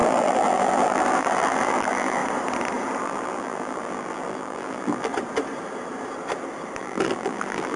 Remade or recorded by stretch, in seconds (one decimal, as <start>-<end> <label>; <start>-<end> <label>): 0.0-2.2 remade; 2.2-3.0 recorded; 3.0-5.1 remade; 5.1-6.8 recorded; 6.8-7.8 remade